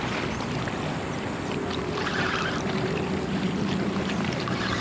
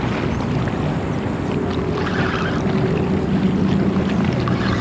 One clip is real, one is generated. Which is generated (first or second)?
first